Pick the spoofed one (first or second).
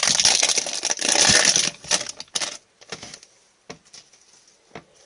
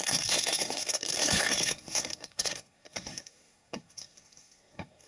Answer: second